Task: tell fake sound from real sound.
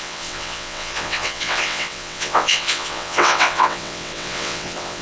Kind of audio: fake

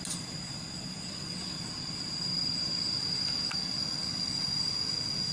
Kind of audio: real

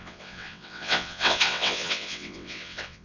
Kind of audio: fake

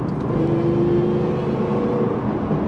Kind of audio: real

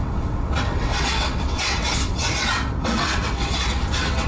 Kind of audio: fake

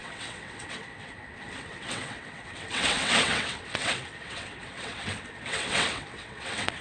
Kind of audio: fake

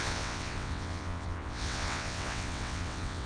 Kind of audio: fake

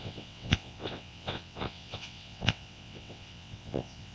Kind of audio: fake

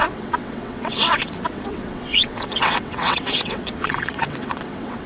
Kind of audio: fake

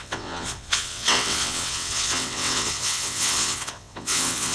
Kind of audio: fake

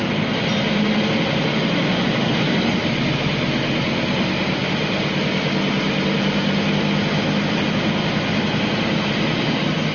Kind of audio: real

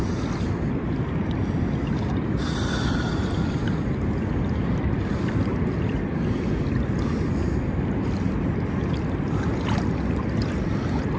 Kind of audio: real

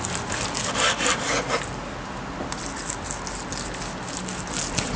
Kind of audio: real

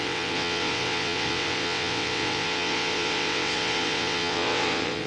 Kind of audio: fake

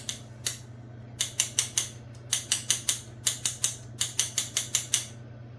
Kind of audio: real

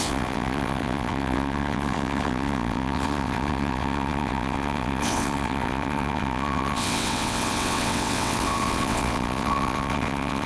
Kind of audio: fake